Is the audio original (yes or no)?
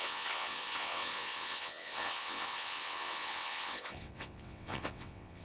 no